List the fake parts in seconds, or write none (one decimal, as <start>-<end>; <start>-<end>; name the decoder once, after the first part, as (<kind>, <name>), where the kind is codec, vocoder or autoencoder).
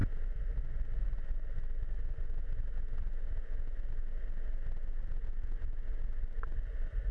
0.0-0.6 (vocoder, BigVGAN v2)